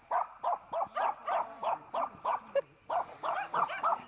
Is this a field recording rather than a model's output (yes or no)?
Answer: yes